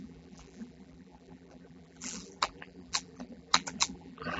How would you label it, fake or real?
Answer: fake